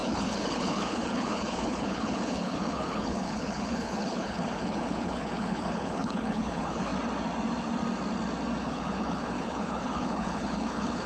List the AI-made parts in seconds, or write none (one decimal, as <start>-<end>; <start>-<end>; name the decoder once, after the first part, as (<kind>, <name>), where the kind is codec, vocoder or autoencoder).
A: 0.0-6.9 (codec, HILCodec); 8.6-11.1